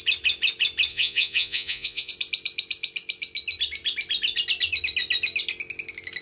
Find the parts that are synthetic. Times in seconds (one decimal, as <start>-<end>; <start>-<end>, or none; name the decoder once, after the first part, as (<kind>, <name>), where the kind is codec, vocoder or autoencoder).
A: 0.9-2.1 (vocoder, Vocos)